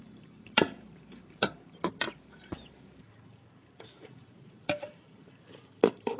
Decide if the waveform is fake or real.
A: fake